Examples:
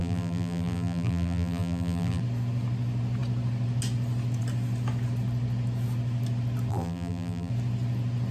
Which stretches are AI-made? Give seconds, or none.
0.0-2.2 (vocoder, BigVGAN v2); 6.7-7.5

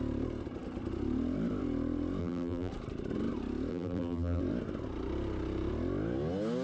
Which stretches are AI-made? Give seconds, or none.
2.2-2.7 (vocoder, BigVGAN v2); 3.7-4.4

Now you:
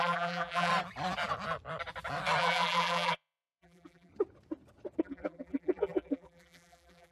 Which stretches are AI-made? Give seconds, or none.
0.0-0.7 (vocoder, BigVGAN v2); 2.4-4.1; 5.0-7.1

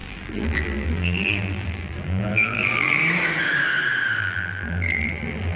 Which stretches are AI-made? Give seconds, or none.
0.0-3.0 (vocoder, BigVGAN v2); 4.2-5.6

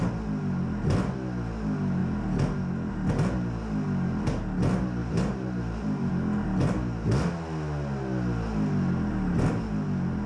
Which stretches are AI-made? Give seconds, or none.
5.0-6.1 (vocoder, BigVGAN v2)